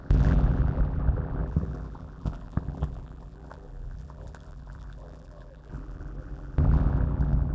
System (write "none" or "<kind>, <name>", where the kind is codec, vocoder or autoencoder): vocoder, BigVGAN v2